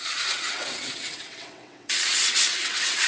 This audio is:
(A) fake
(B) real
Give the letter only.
A